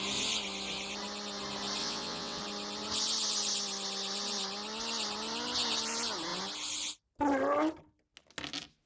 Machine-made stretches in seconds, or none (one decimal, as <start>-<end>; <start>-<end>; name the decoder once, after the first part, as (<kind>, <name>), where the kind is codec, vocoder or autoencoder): 1.8-2.4 (vocoder, WaveNeXt)

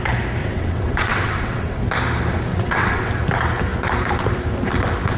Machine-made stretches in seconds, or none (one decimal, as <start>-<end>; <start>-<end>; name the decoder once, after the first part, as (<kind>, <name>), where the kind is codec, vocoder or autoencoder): 0.4-1.8 (vocoder, WaveNeXt); 2.5-3.1